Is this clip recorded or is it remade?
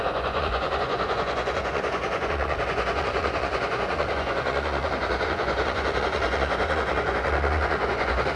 remade